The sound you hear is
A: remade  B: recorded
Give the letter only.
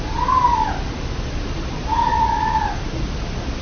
B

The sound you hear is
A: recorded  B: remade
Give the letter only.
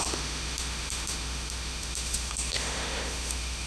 B